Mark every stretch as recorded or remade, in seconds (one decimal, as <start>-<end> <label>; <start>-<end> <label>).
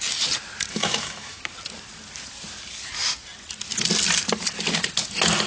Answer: 0.0-0.7 recorded; 0.7-1.4 remade; 1.4-5.5 recorded